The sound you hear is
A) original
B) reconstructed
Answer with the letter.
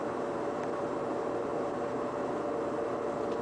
B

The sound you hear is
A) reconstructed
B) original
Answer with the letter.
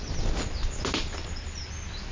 B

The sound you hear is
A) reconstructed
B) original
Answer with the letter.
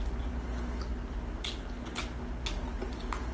B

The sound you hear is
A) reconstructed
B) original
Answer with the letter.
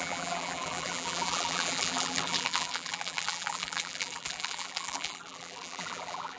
A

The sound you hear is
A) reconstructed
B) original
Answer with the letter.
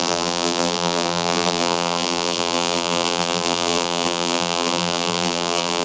A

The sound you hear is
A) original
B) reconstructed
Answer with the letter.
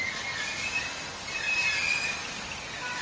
B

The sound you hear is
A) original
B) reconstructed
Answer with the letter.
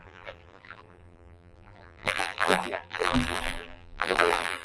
B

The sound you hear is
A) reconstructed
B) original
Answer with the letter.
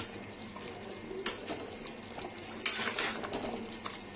B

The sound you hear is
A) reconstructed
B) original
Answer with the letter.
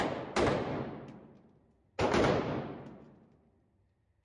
B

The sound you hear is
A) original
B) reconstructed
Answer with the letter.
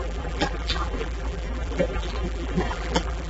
B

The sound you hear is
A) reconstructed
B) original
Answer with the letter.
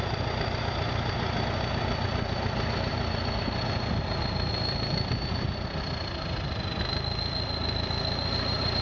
B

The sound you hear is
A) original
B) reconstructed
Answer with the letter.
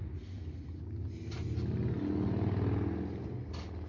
A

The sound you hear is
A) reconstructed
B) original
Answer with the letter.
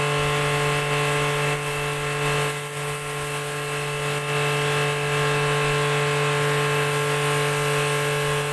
B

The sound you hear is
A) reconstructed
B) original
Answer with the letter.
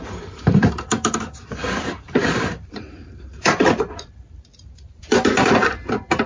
A